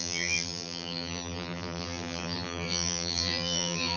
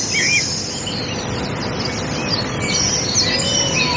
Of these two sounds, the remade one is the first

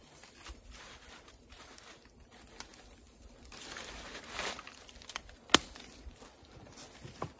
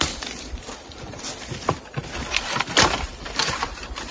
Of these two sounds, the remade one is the second